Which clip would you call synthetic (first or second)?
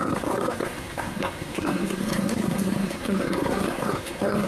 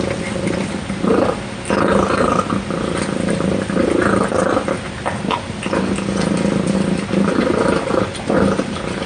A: first